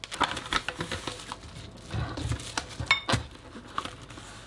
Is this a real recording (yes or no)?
yes